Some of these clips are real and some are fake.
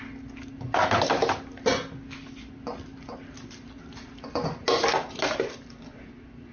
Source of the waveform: real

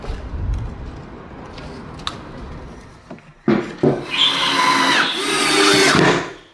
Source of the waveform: real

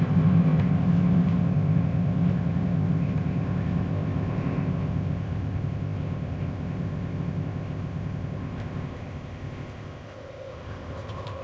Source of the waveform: fake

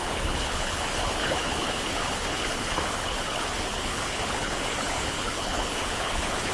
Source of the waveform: fake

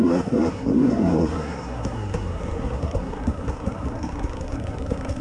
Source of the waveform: fake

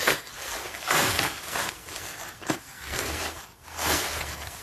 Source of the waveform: fake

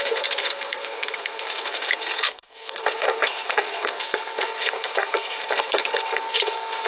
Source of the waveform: fake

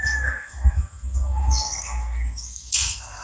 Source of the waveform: fake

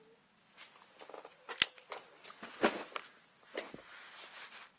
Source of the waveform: real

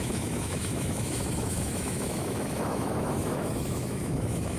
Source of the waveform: fake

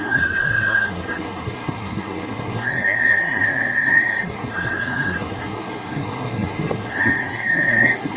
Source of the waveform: fake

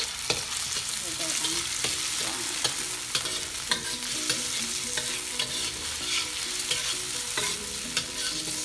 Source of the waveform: real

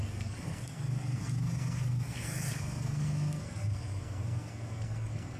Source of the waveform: fake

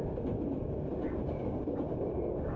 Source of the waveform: real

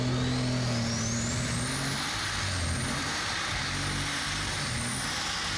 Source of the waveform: real